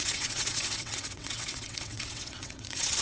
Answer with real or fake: fake